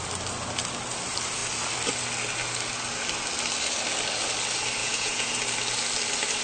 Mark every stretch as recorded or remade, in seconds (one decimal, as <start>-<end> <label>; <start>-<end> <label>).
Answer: 0.0-4.8 recorded; 4.8-5.4 remade; 5.4-6.4 recorded